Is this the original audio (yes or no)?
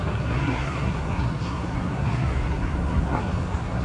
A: no